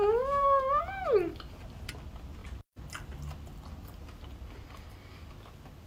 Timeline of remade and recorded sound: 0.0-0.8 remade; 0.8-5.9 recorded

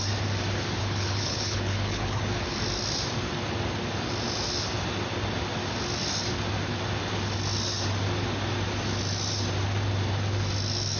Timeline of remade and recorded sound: 0.0-0.8 recorded; 0.8-2.2 remade; 2.2-11.0 recorded

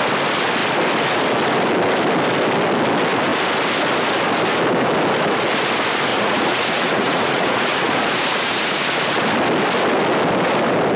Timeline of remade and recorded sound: 0.0-6.1 recorded; 6.1-8.8 remade; 8.8-11.0 recorded

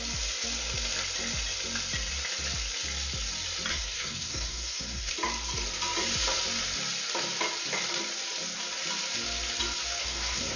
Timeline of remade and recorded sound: 0.0-3.7 recorded; 3.7-5.1 remade; 5.1-10.0 recorded; 10.0-10.6 remade

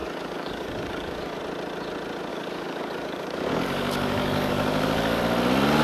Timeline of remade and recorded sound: 0.0-1.4 remade; 1.4-2.3 recorded; 2.3-5.2 remade; 5.2-5.8 recorded